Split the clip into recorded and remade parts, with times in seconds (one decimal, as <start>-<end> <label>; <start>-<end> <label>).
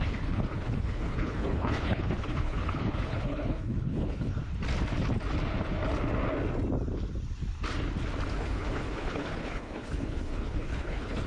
0.0-4.3 remade; 4.3-8.3 recorded; 8.3-11.3 remade